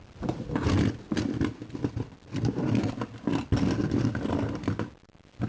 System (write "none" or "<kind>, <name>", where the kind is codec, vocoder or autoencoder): none